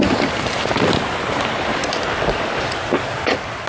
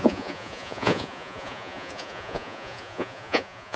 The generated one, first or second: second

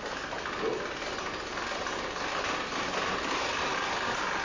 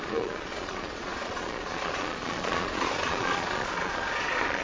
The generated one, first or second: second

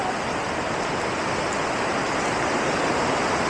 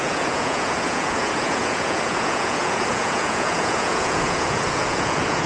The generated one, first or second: second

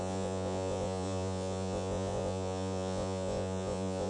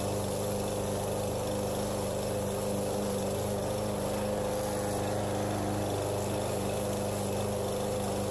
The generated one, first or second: first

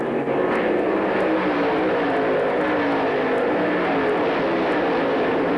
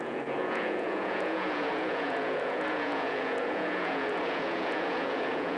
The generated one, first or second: second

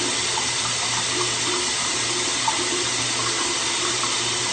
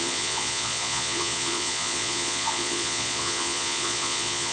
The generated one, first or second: second